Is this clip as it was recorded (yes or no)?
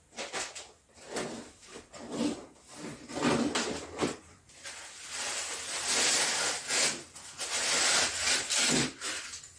yes